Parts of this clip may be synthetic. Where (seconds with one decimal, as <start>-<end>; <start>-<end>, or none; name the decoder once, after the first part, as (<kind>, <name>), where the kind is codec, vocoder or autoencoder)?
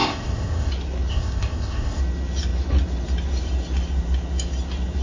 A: 0.0-0.7 (codec, ZipCodec); 1.1-2.0